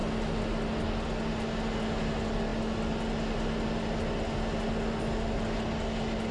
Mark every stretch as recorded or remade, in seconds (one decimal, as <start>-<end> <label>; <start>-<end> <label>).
0.0-6.3 recorded